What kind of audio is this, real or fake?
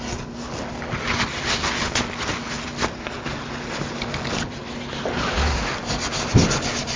real